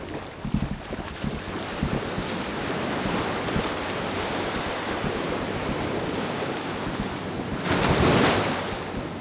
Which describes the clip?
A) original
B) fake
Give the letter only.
A